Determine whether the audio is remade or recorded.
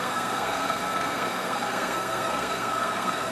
remade